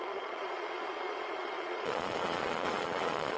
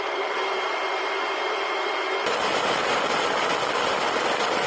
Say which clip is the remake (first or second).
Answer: first